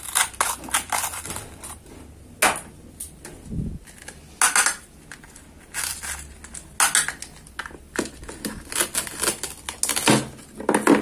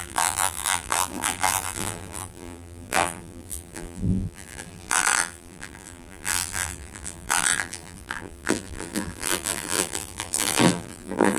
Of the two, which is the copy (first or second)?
second